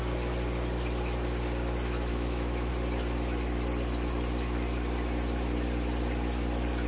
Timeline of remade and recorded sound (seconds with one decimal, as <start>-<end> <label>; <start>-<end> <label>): 0.0-2.1 recorded; 2.1-2.7 remade; 2.7-6.9 recorded